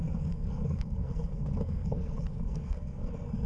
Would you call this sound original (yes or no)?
no